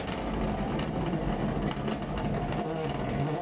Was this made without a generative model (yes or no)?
yes